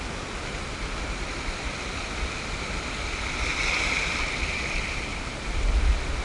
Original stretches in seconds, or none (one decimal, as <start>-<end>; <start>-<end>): 0.0-5.1; 5.7-6.2